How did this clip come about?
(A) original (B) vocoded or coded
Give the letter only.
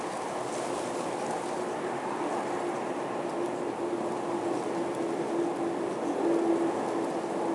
A